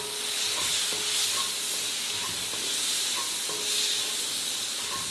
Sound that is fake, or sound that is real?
real